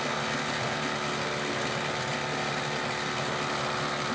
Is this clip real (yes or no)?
yes